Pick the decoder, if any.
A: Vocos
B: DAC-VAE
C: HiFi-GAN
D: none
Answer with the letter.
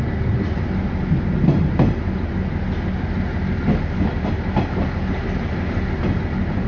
D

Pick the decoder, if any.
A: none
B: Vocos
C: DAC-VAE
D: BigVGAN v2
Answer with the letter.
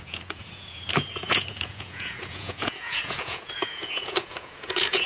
B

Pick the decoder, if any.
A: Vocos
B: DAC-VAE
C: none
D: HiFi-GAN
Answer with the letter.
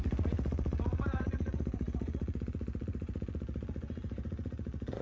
A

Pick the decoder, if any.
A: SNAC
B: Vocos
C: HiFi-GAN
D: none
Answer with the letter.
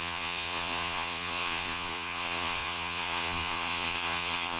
B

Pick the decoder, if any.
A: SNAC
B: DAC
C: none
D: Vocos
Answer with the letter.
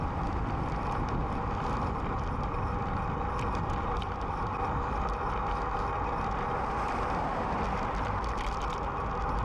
C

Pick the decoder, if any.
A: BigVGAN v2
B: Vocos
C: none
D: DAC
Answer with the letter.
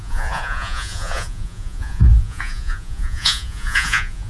B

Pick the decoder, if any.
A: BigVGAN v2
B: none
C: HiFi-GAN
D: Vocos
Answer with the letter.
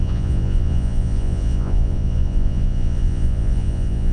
D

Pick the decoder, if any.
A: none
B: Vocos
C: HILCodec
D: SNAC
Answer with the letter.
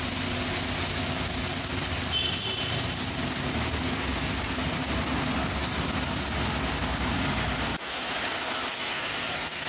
A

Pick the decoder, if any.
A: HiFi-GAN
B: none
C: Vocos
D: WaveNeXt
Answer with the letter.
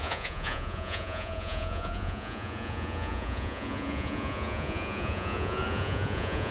C